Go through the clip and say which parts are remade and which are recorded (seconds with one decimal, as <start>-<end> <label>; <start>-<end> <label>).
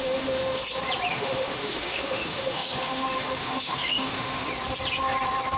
0.0-0.6 remade; 0.6-1.1 recorded; 1.1-4.5 remade; 4.5-5.6 recorded